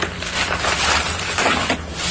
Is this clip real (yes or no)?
yes